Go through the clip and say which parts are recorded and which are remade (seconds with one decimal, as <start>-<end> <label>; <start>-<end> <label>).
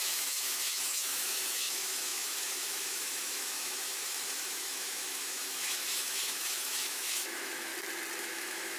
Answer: 0.0-7.7 remade; 7.7-8.2 recorded; 8.2-8.8 remade